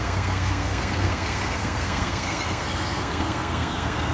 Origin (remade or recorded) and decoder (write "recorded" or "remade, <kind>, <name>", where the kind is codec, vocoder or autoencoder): remade, codec, SNAC